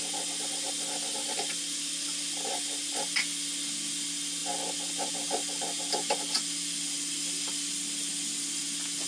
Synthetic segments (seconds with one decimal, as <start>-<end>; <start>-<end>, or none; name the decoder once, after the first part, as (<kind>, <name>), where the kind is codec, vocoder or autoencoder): none